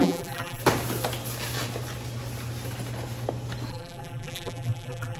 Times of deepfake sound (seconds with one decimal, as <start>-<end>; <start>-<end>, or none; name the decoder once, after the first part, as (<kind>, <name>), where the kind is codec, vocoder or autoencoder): 0.0-0.6 (vocoder, BigVGAN v2); 3.7-5.2